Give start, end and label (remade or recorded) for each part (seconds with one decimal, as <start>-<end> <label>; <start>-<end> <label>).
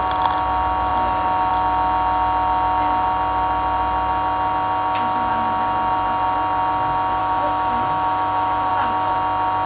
0.0-7.2 recorded; 7.2-8.7 remade; 8.7-9.7 recorded